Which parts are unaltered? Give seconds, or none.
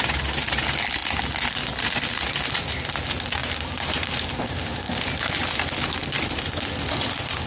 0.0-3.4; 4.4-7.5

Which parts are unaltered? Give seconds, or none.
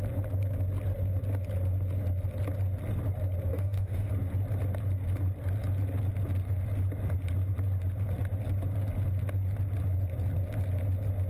0.0-3.5; 4.1-11.3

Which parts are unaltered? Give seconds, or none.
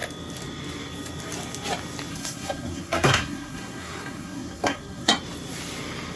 0.0-2.1; 5.1-6.2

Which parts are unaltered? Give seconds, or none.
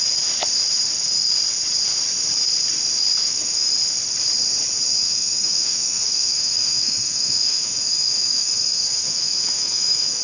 0.0-3.2; 3.7-5.0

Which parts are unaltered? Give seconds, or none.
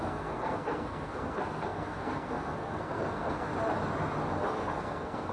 3.5-4.5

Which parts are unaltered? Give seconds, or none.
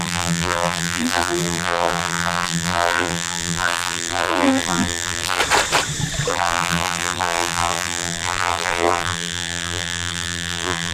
5.4-6.3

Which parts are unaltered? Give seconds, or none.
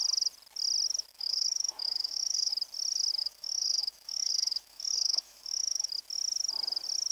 0.0-1.1; 2.5-3.2; 5.9-7.1